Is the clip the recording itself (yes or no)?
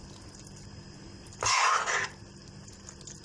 yes